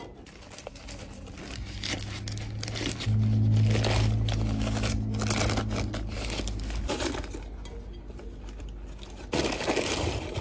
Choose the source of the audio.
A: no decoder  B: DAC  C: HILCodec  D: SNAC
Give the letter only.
A